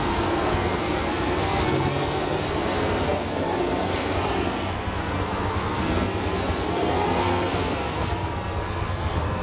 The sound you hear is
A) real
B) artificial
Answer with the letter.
B